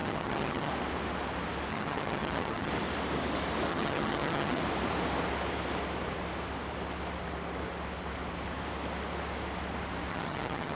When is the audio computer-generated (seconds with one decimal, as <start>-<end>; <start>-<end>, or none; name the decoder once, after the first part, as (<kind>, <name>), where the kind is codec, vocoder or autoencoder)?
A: 0.0-0.7 (vocoder, HiFi-GAN); 1.7-2.7; 3.7-4.6; 10.1-10.8